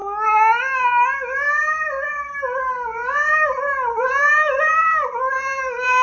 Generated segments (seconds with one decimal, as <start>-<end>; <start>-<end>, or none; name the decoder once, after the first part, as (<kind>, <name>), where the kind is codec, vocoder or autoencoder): 3.6-6.0 (vocoder, BigVGAN v2)